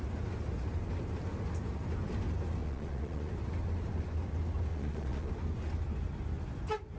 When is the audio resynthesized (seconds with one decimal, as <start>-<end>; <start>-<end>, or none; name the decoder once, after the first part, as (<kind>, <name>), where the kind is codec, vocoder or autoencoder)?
2.6-3.3 (vocoder, Vocos); 4.7-5.3